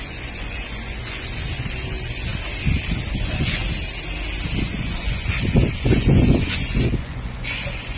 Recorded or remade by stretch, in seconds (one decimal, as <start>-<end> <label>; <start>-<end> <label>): 0.0-2.3 remade; 2.3-3.1 recorded; 3.1-3.6 remade; 3.6-4.6 recorded; 4.6-8.0 remade